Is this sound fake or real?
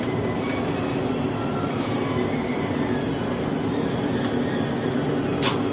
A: real